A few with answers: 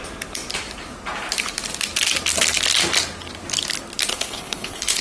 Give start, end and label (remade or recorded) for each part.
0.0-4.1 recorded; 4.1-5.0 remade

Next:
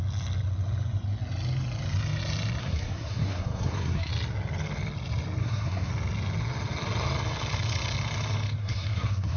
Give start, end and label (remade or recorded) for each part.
0.0-2.6 recorded; 2.6-4.1 remade; 4.1-5.4 recorded; 5.4-5.9 remade; 5.9-8.6 recorded; 8.6-9.4 remade

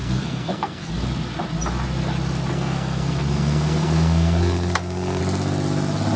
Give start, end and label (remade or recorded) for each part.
0.0-0.9 remade; 0.9-2.5 recorded; 2.5-5.2 remade; 5.2-6.2 recorded

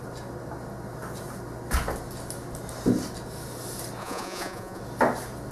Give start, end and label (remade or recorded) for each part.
0.0-4.0 recorded; 4.0-4.8 remade; 4.8-5.5 recorded

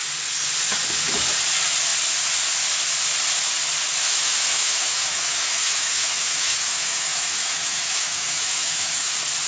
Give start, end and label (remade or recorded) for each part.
0.0-4.1 recorded; 4.1-9.1 remade; 9.1-9.5 recorded

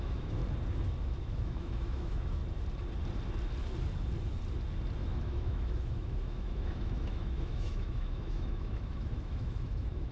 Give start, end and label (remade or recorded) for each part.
0.0-0.4 remade; 0.4-1.0 recorded; 1.0-2.4 remade; 2.4-5.0 recorded; 5.0-10.1 remade

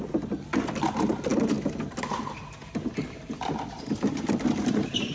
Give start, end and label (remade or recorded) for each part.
0.0-5.1 recorded

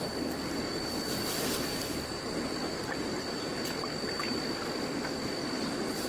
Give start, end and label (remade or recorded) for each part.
0.0-6.1 recorded